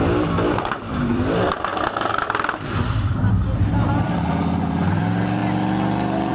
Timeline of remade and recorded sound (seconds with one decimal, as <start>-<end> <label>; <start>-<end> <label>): 0.0-1.7 remade; 1.7-2.6 recorded; 2.6-5.4 remade; 5.4-6.3 recorded